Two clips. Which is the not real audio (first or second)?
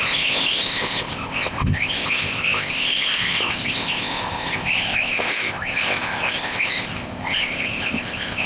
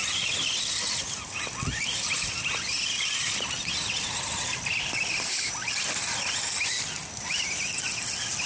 first